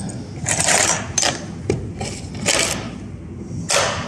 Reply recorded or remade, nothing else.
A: recorded